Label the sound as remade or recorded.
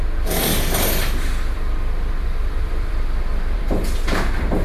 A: remade